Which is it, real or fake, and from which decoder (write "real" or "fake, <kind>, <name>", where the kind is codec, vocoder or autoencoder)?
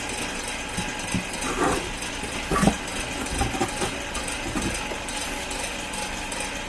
real